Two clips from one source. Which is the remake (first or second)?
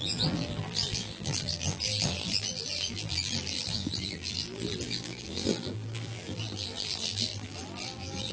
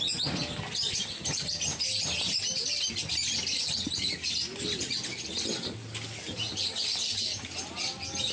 first